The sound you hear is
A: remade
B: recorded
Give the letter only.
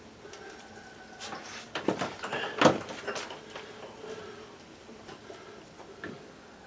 B